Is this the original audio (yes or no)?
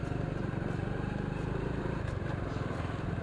no